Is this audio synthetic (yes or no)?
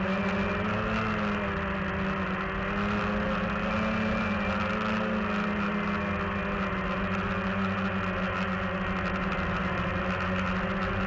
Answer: no